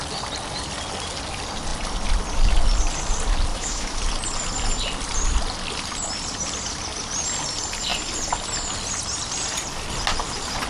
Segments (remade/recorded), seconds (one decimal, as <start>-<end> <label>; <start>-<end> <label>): 0.0-3.5 recorded; 3.5-4.0 remade; 4.0-10.7 recorded